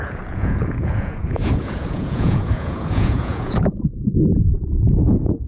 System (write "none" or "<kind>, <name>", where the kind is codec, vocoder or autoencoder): vocoder, Vocos